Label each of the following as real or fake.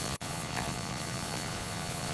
fake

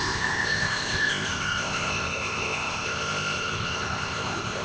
fake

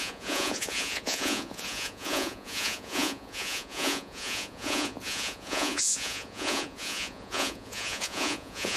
fake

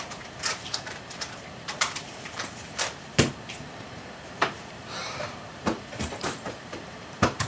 fake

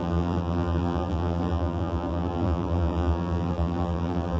fake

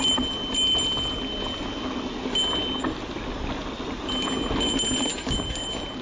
real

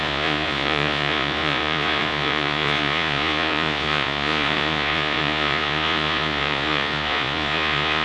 fake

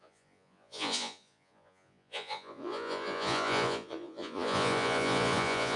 fake